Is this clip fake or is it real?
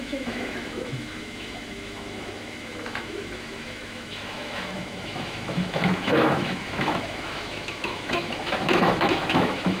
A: fake